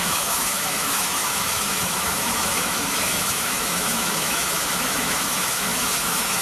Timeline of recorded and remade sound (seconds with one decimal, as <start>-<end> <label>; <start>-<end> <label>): 0.0-6.4 remade